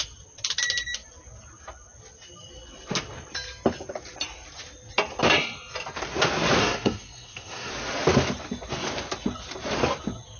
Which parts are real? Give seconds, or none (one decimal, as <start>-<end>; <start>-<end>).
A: 0.0-6.6; 7.7-10.4